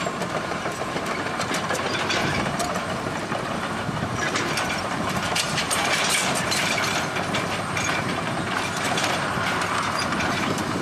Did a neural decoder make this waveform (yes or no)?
yes